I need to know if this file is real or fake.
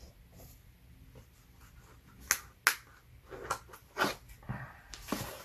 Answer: real